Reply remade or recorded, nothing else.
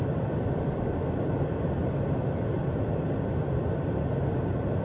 recorded